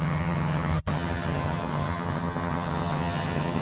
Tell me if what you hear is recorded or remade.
remade